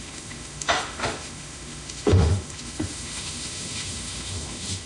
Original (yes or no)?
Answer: no